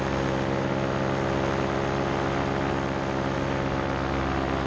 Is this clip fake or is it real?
real